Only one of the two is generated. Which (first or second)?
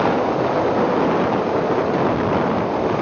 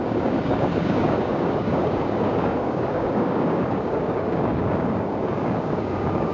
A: second